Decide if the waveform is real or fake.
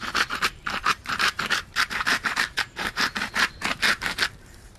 fake